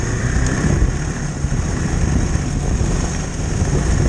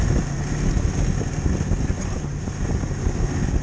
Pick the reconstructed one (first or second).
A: first